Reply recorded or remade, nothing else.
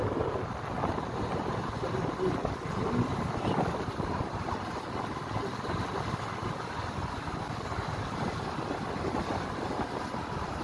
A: recorded